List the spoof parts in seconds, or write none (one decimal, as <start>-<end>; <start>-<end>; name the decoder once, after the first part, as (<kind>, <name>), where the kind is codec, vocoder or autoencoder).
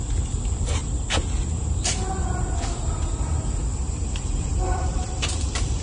0.0-0.8 (vocoder, BigVGAN v2); 3.9-5.8